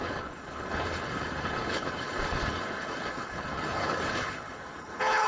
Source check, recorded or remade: remade